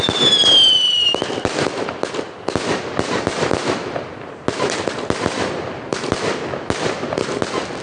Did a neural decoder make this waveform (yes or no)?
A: no